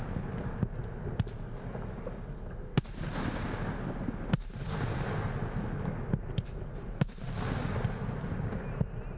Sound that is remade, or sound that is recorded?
recorded